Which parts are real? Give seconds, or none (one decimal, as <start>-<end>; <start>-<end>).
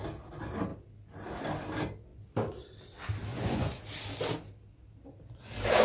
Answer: 0.0-3.3; 3.8-5.8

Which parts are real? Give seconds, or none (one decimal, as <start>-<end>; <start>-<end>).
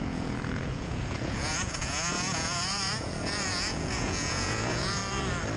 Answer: 5.0-5.6